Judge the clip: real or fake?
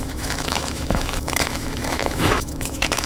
fake